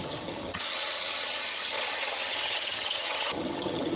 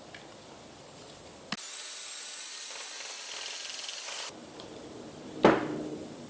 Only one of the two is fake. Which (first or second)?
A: first